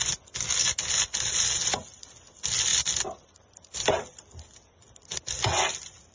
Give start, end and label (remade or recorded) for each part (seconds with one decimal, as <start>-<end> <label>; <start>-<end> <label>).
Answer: 0.0-6.1 recorded